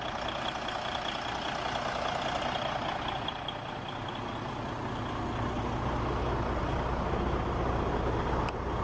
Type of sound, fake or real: real